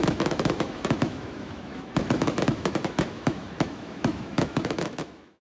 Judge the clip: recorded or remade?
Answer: remade